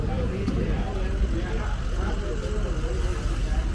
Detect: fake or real real